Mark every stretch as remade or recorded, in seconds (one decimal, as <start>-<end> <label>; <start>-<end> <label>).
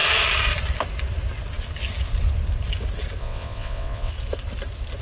0.0-3.2 recorded; 3.2-4.1 remade; 4.1-5.0 recorded